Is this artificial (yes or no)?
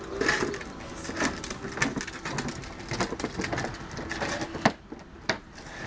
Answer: no